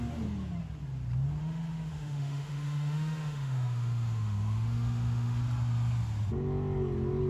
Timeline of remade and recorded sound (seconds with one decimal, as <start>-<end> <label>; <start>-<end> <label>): 0.0-1.4 recorded; 1.4-5.4 remade; 5.4-7.3 recorded